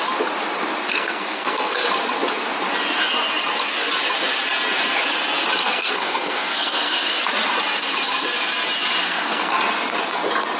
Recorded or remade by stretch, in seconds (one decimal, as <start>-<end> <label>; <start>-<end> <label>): 0.0-0.9 recorded; 0.9-1.8 remade; 1.8-5.6 recorded; 5.6-7.2 remade; 7.2-9.0 recorded; 9.0-9.6 remade; 9.6-10.6 recorded